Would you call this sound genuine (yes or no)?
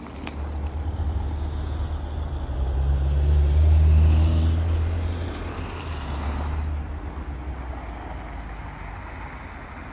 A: yes